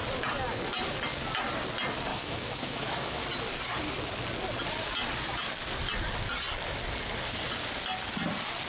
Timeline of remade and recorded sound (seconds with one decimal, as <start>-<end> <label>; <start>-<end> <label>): 0.0-2.1 recorded; 2.1-3.2 remade; 3.2-8.7 recorded